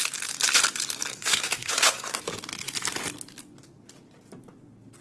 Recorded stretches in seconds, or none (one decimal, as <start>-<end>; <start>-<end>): 0.0-1.1; 2.2-5.0

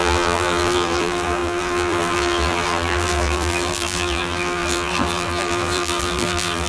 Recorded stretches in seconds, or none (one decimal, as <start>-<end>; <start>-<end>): none

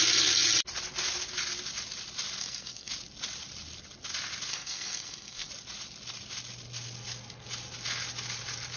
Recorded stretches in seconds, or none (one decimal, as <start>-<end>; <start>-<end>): 0.0-2.4; 2.9-4.5; 5.5-8.8

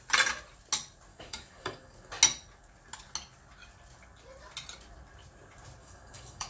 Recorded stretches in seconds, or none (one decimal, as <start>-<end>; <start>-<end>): 0.0-1.1; 2.1-5.8